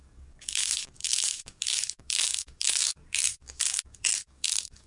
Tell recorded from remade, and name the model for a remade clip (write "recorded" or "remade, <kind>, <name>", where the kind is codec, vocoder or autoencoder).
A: remade, codec, DAC